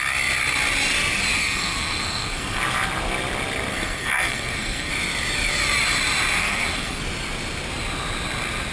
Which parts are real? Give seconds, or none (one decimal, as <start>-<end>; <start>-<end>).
0.0-1.4; 2.6-3.7; 4.9-6.4; 7.0-8.7